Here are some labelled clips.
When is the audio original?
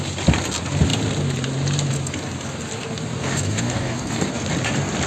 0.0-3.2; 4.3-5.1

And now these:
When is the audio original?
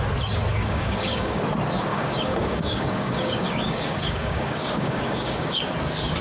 0.0-0.6; 1.4-1.9; 5.6-6.2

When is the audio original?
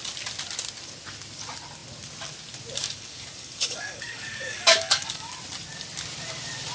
0.0-2.8; 5.3-6.7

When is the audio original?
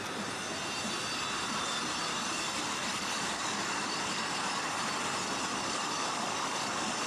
0.0-2.1; 4.8-5.5